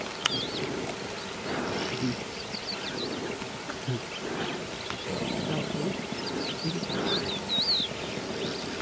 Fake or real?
real